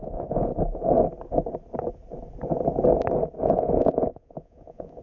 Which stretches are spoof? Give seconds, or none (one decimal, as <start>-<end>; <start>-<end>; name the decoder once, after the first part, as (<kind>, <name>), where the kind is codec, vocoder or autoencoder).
0.0-0.5 (vocoder, Vocos); 3.4-5.0